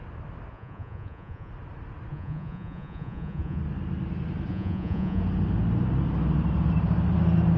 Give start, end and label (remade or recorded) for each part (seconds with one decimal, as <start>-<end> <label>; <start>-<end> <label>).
0.0-0.5 recorded; 0.5-1.5 remade; 1.5-2.1 recorded; 2.1-3.6 remade; 3.6-4.5 recorded; 4.5-5.2 remade; 5.2-7.6 recorded